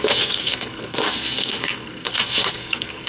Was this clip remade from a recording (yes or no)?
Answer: yes